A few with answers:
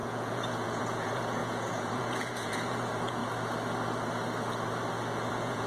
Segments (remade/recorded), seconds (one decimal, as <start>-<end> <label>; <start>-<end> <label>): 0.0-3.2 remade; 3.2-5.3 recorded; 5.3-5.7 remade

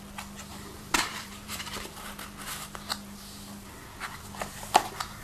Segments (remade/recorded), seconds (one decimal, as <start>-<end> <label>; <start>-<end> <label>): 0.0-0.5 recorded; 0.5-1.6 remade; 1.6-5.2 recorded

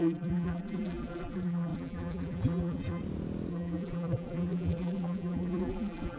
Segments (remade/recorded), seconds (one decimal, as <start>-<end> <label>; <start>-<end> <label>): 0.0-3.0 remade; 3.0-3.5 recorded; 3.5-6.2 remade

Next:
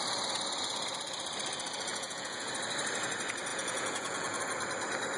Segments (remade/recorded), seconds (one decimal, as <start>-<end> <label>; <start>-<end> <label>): 0.0-1.9 recorded; 1.9-2.5 remade; 2.5-3.5 recorded; 3.5-4.4 remade; 4.4-5.2 recorded

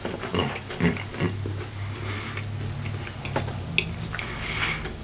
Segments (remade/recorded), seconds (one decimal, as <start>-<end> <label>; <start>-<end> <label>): 0.0-1.1 remade; 1.1-4.1 recorded; 4.1-5.0 remade

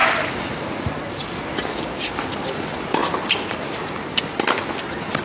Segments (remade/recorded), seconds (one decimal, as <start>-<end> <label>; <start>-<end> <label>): 0.0-5.2 recorded